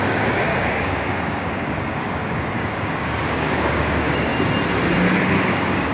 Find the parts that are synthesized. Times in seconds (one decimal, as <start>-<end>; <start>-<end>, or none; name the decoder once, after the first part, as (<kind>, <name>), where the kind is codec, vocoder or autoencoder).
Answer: 0.0-4.3 (codec, DAC); 5.5-5.9